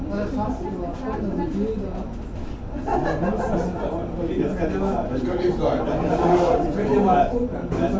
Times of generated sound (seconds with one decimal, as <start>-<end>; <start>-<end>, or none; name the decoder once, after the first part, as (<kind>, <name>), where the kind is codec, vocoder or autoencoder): none